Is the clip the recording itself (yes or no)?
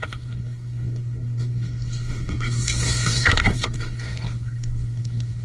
no